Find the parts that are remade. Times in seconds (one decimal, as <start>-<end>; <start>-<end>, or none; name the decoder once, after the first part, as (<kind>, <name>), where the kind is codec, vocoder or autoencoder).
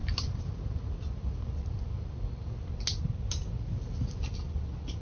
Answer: none